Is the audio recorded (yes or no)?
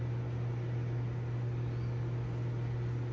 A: yes